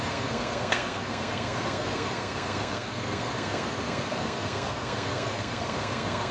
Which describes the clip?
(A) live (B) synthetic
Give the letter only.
B